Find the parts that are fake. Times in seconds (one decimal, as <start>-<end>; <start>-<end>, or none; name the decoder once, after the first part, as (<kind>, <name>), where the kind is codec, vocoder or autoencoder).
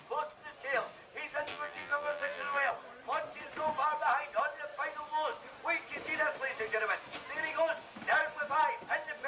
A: 1.5-2.7 (vocoder, BigVGAN v2)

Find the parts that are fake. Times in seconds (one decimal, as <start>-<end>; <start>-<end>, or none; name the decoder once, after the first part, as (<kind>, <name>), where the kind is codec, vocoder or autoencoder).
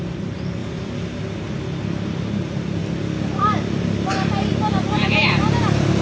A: 0.0-0.6 (vocoder, BigVGAN v2); 2.3-2.8; 4.5-6.0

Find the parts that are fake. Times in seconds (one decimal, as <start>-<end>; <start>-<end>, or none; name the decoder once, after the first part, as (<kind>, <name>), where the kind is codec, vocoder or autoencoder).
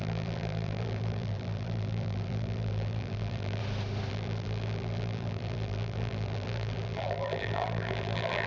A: 0.0-3.6 (vocoder, BigVGAN v2); 4.1-8.5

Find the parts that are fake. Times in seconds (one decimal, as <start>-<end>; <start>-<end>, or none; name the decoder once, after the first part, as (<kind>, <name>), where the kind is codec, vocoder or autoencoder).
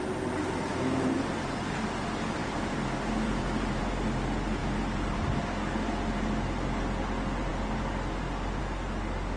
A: 2.4-3.8 (vocoder, BigVGAN v2)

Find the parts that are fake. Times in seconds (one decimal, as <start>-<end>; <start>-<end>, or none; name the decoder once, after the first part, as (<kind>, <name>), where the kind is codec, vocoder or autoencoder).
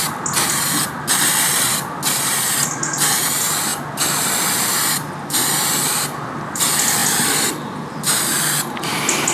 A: 1.7-2.6 (vocoder, BigVGAN v2); 7.0-8.2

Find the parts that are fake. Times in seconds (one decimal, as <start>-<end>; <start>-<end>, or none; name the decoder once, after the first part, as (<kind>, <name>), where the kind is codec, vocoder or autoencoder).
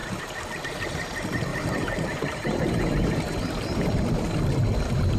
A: 1.5-3.9 (vocoder, BigVGAN v2)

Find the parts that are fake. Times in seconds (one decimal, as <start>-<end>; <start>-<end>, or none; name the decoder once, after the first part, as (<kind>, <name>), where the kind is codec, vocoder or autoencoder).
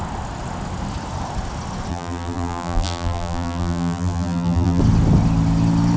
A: 1.9-4.8 (vocoder, BigVGAN v2)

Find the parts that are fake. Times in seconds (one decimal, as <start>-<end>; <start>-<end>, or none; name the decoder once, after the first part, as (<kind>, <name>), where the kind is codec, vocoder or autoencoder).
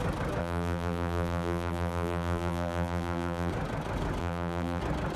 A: 0.4-3.5 (vocoder, BigVGAN v2); 4.2-4.8